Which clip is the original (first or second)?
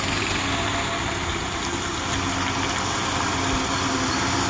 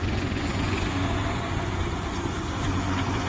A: first